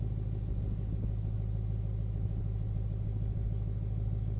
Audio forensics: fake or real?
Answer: real